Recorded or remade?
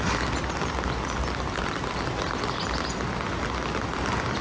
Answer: recorded